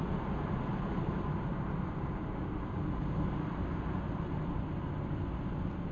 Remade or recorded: recorded